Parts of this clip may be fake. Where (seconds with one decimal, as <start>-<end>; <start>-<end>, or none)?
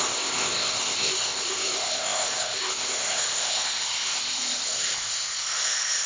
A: 0.0-6.1